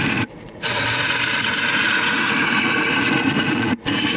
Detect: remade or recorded remade